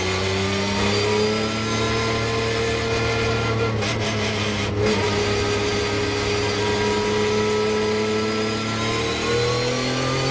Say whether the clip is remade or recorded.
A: recorded